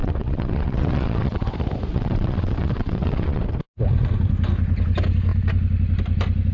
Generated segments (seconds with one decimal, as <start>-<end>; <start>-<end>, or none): 0.0-1.5; 1.9-3.4